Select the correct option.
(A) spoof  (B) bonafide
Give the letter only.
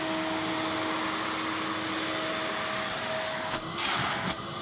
B